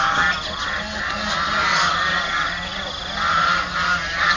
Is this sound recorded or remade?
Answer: recorded